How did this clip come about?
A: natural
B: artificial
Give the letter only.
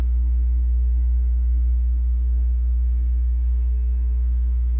B